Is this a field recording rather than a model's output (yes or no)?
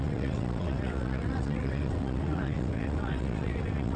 no